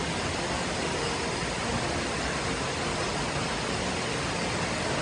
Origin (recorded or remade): recorded